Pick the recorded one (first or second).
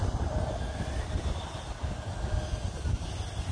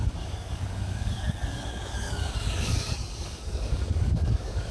first